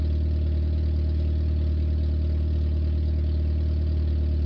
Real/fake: real